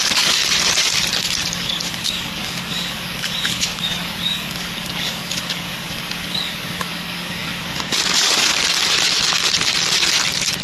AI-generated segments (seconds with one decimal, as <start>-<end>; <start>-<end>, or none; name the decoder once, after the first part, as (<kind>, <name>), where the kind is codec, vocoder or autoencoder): 0.0-0.4 (codec, DAC); 1.5-8.5